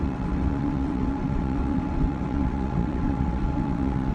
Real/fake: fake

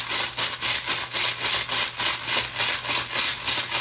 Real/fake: real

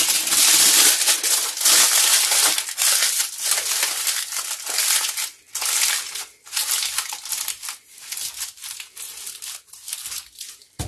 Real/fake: real